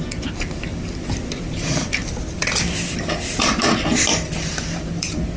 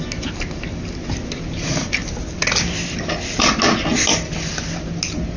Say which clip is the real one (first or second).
second